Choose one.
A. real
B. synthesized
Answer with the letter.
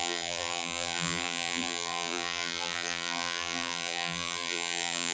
B